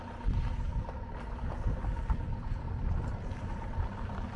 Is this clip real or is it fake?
real